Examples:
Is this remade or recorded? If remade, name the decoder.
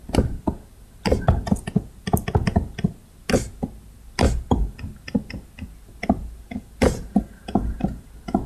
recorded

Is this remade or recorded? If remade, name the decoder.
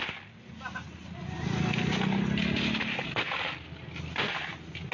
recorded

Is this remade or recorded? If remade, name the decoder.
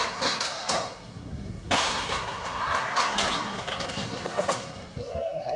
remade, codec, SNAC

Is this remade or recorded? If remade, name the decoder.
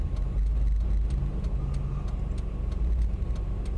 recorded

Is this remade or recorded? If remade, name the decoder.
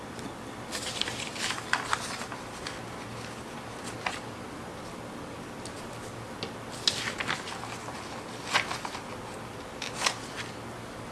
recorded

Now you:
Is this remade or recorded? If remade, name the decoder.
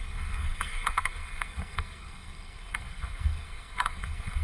remade, codec, SNAC